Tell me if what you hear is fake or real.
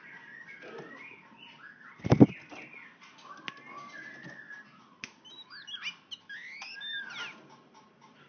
real